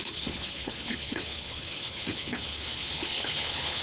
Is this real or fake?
fake